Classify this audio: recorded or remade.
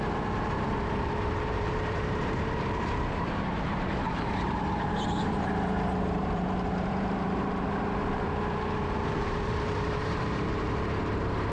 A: remade